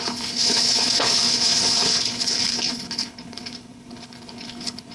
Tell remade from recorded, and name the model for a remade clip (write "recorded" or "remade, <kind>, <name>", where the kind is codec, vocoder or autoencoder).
remade, codec, HILCodec